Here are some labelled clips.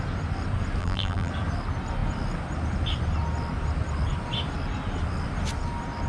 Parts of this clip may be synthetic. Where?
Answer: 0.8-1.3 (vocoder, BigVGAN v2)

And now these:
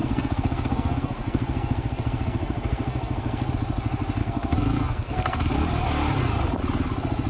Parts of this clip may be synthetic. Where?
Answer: 0.0-3.5 (codec, SNAC); 4.2-5.5

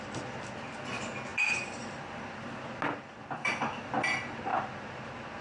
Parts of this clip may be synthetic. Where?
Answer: 1.3-2.3 (vocoder, BigVGAN v2); 3.2-4.1

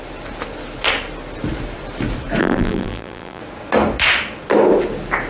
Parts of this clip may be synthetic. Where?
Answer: 2.4-3.4 (vocoder, BigVGAN v2)

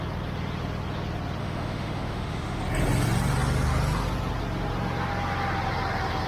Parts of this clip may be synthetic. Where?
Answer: 1.4-2.6 (autoencoder, DAC-VAE)